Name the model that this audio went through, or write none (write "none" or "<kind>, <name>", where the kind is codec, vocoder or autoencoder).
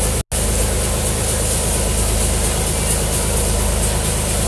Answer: none